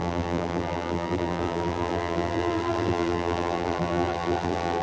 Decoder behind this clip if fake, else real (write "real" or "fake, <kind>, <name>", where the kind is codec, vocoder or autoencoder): fake, vocoder, BigVGAN v2